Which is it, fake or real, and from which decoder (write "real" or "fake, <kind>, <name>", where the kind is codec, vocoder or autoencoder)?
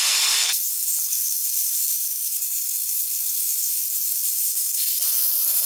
fake, codec, SNAC